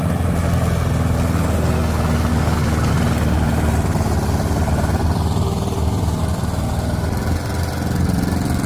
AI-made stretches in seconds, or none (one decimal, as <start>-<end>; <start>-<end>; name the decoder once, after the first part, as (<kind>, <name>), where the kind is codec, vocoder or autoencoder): 2.3-2.9 (codec, DAC)